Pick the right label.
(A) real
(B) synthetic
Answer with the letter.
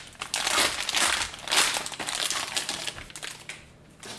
A